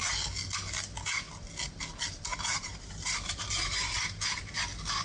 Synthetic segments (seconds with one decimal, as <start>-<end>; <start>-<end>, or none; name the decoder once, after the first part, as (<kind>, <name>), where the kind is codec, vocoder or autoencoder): 2.3-4.2 (vocoder, BigVGAN v2)